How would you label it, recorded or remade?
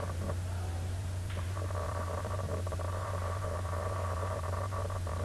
remade